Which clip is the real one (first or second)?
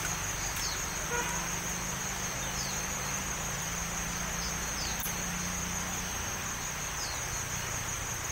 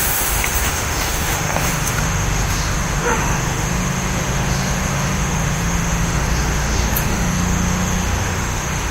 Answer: first